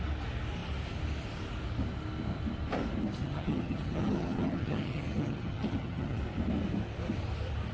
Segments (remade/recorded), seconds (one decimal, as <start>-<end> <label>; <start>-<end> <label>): 0.0-3.2 recorded; 3.2-6.2 remade; 6.2-7.7 recorded